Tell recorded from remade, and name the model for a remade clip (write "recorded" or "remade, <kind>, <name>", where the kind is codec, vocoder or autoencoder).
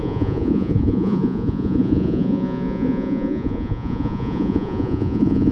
remade, vocoder, Vocos